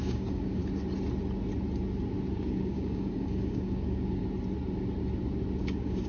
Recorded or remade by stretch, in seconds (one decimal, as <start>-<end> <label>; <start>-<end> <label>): 0.0-0.6 remade; 0.6-2.3 recorded; 2.3-4.2 remade; 4.2-5.6 recorded; 5.6-6.1 remade